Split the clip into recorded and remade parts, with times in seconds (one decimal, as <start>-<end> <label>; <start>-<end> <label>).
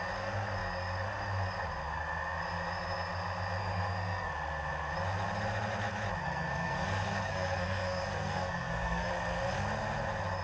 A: 0.0-3.6 recorded; 3.6-4.3 remade; 4.3-6.2 recorded; 6.2-9.1 remade; 9.1-10.4 recorded